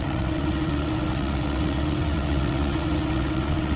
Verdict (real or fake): fake